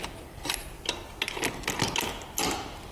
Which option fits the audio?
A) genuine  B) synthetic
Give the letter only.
A